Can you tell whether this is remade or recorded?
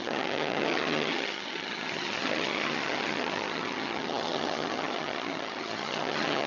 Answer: remade